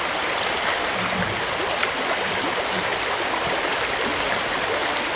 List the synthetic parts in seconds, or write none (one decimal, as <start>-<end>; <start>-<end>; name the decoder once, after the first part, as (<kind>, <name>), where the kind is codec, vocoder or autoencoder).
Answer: 0.0-2.9 (vocoder, BigVGAN v2); 3.5-4.1